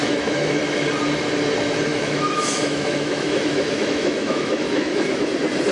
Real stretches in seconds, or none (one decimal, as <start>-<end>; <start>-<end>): 0.6-1.9; 5.3-5.7